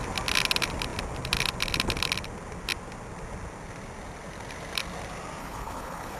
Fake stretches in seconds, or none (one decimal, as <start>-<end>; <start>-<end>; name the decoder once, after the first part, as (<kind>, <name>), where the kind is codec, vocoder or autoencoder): 5.4-6.2 (codec, HILCodec)

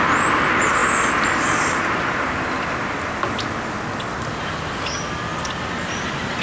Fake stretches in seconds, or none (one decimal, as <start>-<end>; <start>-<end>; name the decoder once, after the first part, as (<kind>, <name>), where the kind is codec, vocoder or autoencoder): none

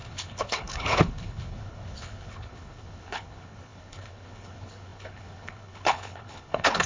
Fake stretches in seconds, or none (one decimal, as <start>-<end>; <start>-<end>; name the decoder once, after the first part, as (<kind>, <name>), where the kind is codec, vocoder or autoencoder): 0.0-6.9 (codec, HILCodec)

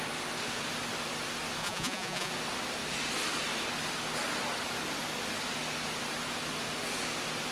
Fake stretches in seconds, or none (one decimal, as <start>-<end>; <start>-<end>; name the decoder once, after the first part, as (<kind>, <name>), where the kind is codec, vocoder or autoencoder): 1.6-2.3 (vocoder, Vocos)